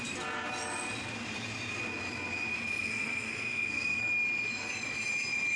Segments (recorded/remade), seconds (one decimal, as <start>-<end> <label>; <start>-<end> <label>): 0.0-2.8 recorded; 2.8-4.0 remade; 4.0-5.6 recorded

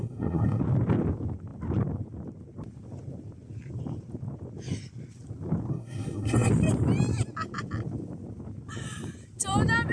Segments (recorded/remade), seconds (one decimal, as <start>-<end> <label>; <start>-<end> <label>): 0.0-0.6 remade; 0.6-5.7 recorded; 5.7-6.5 remade; 6.5-9.9 recorded